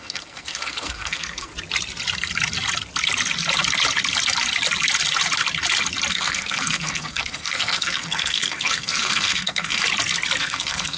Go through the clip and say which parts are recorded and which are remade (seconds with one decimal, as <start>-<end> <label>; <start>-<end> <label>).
0.0-1.5 remade; 1.5-6.1 recorded; 6.1-9.8 remade; 9.8-10.4 recorded; 10.4-11.0 remade